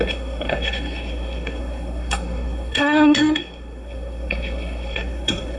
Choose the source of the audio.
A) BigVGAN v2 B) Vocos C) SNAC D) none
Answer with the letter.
C